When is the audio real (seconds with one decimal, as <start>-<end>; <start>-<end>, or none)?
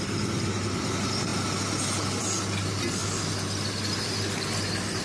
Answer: 1.3-2.2; 3.0-5.0